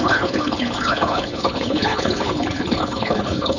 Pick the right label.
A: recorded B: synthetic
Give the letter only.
B